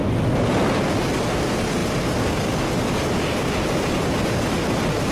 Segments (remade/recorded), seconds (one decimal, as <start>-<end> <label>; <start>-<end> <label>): 0.0-5.1 recorded